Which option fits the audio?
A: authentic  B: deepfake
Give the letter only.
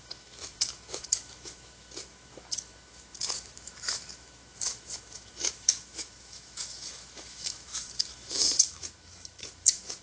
B